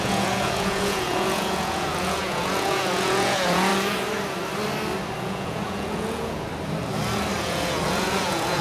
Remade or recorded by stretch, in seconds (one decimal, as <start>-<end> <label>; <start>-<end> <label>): 0.0-3.7 remade; 3.7-5.2 recorded; 5.2-6.5 remade; 6.5-7.4 recorded; 7.4-8.6 remade